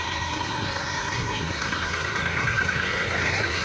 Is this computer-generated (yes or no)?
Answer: yes